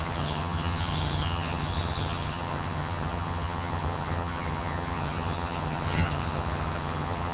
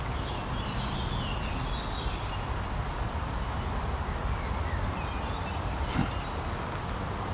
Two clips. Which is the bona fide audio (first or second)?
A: second